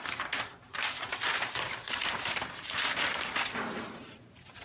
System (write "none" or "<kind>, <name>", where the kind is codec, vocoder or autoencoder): vocoder, BigVGAN v2